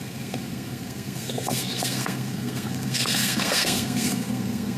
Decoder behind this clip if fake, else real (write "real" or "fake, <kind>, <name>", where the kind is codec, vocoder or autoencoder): fake, codec, SNAC